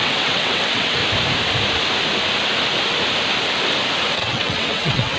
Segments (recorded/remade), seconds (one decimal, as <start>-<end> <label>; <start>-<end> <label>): 0.0-1.0 remade; 1.0-4.1 recorded; 4.1-5.2 remade